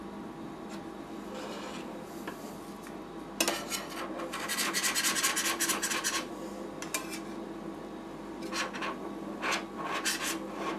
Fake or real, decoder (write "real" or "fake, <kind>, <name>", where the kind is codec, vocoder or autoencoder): real